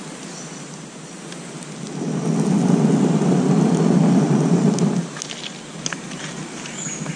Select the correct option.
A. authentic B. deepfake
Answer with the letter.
A